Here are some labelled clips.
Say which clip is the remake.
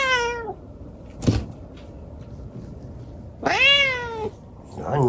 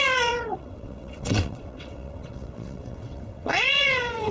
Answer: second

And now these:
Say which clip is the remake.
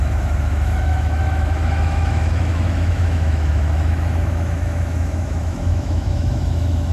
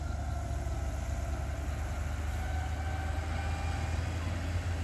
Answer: first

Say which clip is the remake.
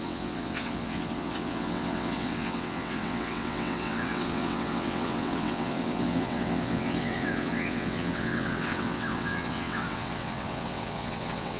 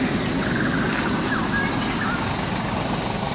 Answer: first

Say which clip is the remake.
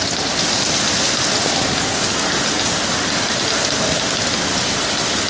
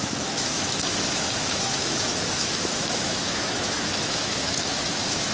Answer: second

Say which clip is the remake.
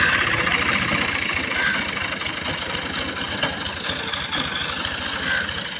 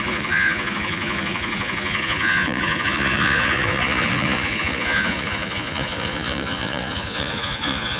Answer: second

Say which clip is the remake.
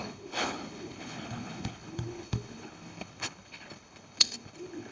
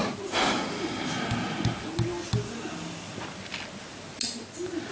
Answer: first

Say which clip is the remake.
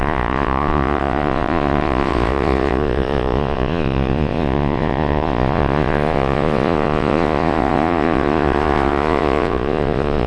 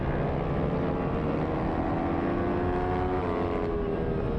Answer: first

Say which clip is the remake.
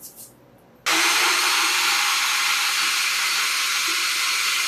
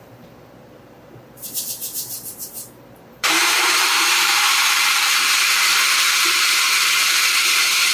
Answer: second